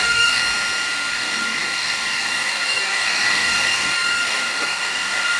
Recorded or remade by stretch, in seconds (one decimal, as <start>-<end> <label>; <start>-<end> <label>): 0.0-0.4 remade; 0.4-1.1 recorded; 1.1-5.4 remade